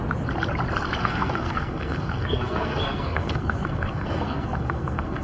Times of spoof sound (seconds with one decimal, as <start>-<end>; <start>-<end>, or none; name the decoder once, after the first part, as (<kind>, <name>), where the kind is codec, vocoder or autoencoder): 1.0-5.2 (codec, SNAC)